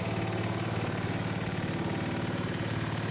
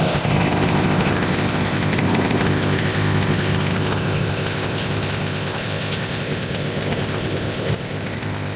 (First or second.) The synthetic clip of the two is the second